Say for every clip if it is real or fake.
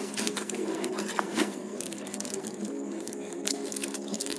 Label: fake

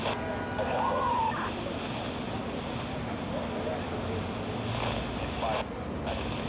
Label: real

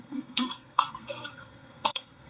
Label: fake